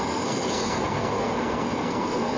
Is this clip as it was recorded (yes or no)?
no